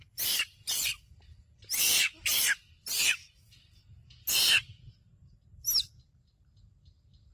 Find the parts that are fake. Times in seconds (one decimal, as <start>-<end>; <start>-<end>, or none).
none